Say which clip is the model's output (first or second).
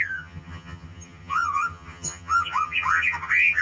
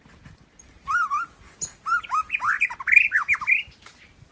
first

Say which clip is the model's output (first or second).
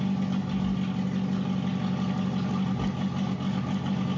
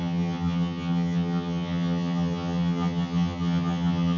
second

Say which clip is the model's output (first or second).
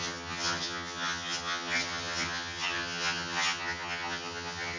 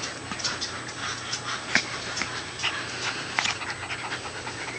first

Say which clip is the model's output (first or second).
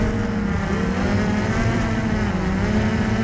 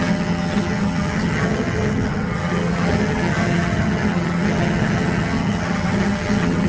second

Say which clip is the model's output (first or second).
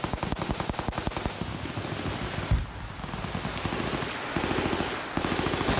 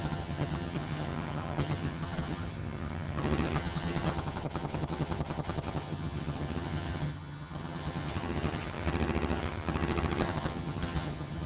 second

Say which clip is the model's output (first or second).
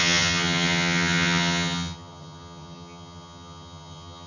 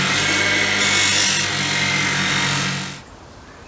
first